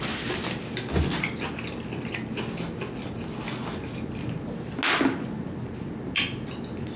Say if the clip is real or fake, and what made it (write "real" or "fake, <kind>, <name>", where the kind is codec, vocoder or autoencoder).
real